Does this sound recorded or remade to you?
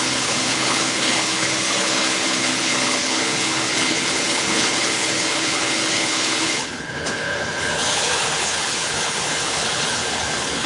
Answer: remade